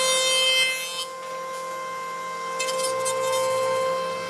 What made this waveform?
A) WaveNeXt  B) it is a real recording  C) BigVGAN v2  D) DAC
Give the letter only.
B